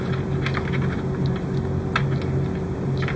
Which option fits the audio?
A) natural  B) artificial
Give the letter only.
A